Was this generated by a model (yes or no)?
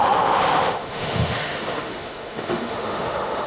yes